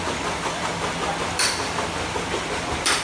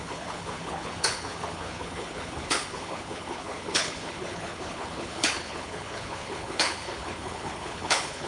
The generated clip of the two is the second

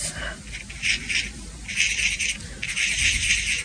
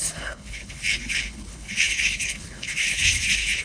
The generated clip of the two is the second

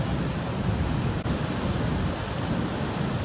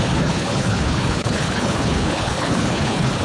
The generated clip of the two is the second